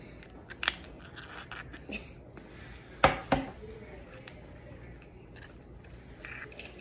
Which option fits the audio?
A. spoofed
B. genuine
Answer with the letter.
B